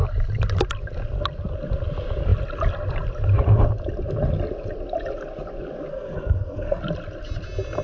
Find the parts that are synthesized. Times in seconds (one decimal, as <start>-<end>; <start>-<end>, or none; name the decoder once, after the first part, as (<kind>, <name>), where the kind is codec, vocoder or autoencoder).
5.9-6.8 (codec, SNAC)